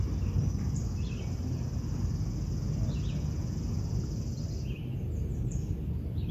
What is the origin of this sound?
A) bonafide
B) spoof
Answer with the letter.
A